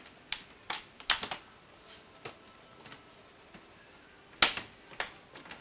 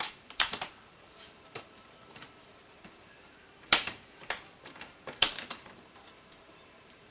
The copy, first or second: second